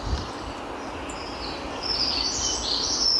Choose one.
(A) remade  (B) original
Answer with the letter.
B